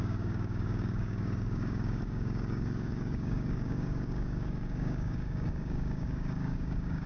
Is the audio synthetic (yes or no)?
yes